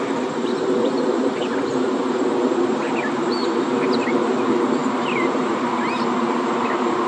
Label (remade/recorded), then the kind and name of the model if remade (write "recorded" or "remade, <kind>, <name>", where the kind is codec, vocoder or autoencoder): remade, vocoder, BigVGAN v2